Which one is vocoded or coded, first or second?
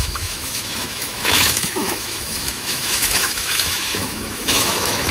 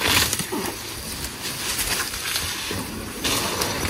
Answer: first